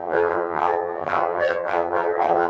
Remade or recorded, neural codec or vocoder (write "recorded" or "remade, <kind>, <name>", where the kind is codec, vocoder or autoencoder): remade, vocoder, HiFi-GAN